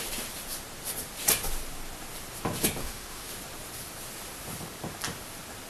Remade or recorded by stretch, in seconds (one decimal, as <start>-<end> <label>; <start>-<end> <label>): 0.0-2.8 recorded; 2.8-3.3 remade; 3.3-5.7 recorded

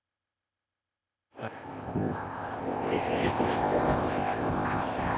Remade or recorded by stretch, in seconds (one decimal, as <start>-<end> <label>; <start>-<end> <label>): 0.0-5.2 remade

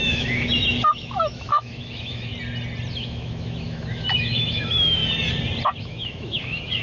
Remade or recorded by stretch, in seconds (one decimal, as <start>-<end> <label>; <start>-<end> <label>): 0.0-2.3 remade; 2.3-2.9 recorded; 2.9-5.0 remade; 5.0-5.8 recorded; 5.8-6.8 remade

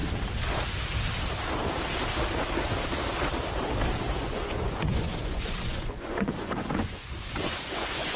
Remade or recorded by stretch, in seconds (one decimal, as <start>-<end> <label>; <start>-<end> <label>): 0.0-4.2 recorded; 4.2-8.2 remade